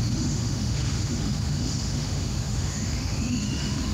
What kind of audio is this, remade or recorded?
remade